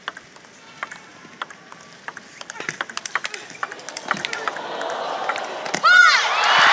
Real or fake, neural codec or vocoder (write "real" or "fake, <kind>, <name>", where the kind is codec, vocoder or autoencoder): real